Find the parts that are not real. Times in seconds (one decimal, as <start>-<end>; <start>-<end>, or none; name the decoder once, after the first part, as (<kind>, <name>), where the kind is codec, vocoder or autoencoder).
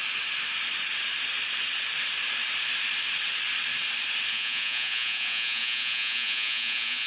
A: 4.3-7.1 (vocoder, Vocos)